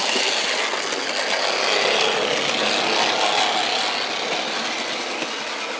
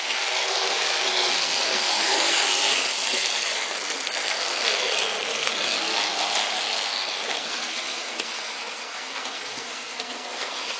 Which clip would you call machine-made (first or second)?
second